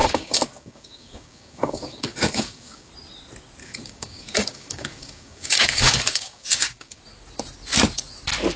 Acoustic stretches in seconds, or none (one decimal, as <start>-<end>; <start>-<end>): 2.9-3.6; 7.0-8.6